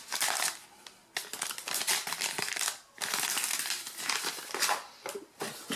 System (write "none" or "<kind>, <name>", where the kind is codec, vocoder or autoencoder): none